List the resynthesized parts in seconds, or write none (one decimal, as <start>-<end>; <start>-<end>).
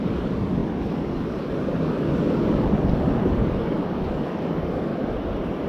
0.0-4.9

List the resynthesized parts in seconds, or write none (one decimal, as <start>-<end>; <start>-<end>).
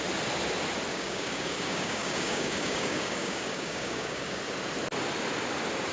0.9-4.4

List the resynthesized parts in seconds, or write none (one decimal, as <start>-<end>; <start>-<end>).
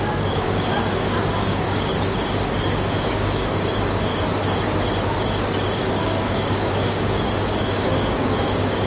0.0-1.9; 2.5-4.1; 5.9-8.9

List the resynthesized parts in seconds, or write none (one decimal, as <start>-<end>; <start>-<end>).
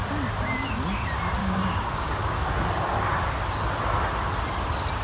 1.4-2.4